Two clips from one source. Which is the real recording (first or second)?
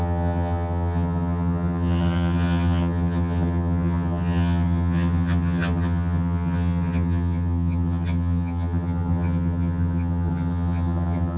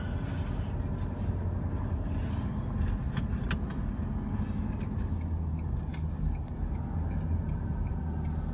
second